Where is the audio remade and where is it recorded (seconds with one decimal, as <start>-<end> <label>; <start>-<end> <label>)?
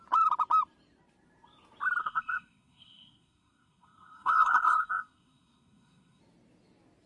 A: 0.0-2.0 recorded; 2.0-6.2 remade; 6.2-7.1 recorded